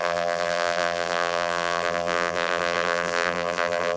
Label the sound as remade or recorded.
remade